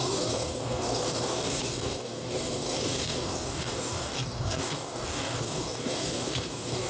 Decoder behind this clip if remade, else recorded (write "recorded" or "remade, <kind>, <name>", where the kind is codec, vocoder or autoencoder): remade, codec, DAC